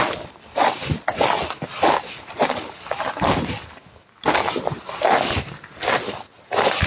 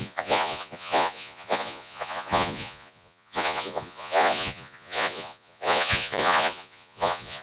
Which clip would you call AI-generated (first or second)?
second